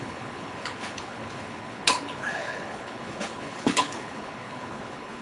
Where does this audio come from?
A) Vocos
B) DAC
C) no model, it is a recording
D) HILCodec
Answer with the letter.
D